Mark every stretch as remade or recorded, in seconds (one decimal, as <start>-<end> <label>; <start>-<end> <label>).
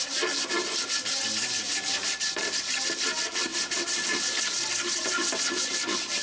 0.0-6.2 recorded